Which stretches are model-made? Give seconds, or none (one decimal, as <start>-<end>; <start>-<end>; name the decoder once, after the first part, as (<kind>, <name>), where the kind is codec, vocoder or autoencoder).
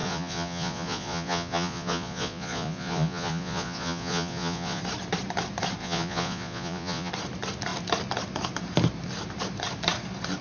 0.0-4.8 (vocoder, Vocos); 5.8-7.1